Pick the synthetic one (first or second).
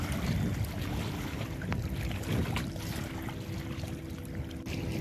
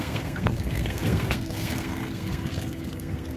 second